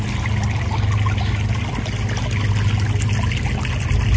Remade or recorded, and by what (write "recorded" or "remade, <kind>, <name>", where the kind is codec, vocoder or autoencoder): recorded